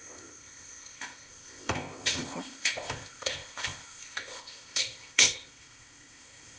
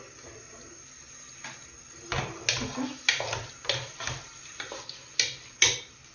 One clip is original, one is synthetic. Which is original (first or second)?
second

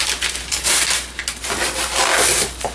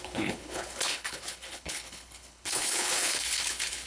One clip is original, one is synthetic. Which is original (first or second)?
first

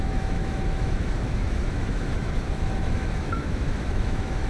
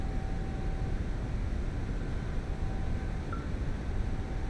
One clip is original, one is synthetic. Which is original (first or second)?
second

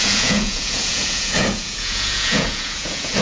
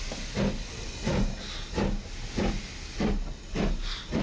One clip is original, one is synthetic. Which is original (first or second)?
second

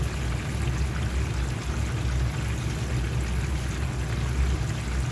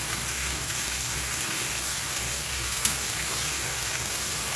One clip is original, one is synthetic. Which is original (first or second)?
first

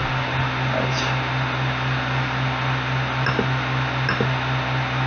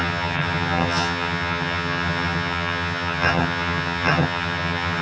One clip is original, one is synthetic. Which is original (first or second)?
first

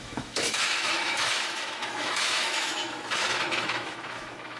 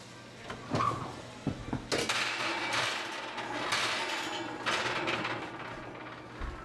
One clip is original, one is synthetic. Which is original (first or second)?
second